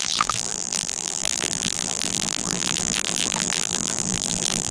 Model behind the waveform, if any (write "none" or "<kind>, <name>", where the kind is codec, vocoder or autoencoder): vocoder, BigVGAN v2